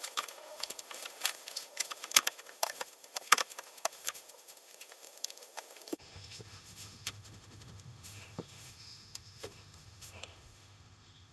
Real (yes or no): no